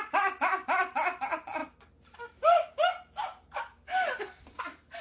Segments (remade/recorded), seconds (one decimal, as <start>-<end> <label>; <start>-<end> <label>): 0.0-5.0 recorded